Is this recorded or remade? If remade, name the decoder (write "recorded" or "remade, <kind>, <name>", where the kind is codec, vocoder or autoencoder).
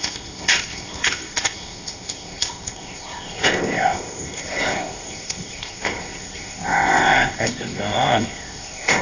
remade, codec, ZipCodec